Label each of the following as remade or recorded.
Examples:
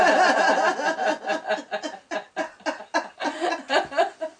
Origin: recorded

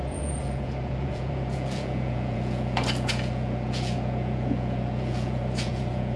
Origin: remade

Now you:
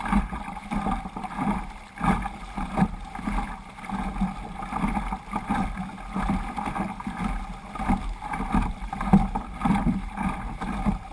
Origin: recorded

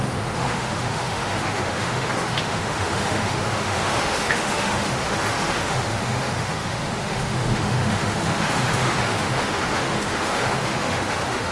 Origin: remade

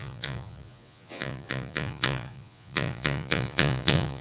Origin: remade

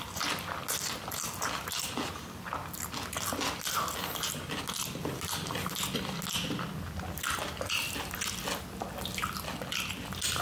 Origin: recorded